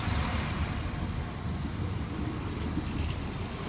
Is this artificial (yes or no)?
yes